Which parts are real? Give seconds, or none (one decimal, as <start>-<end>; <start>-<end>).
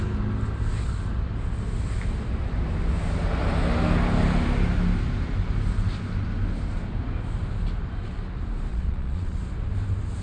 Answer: 0.0-8.7; 9.4-10.2